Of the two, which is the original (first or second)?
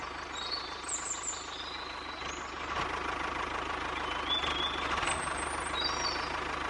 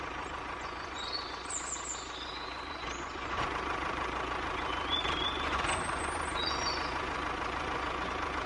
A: first